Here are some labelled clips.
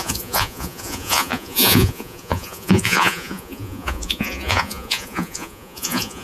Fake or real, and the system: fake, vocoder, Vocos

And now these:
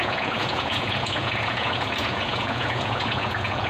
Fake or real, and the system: fake, vocoder, Vocos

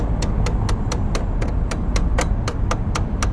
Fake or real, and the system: real